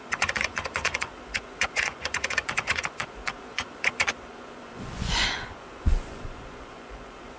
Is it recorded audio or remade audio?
remade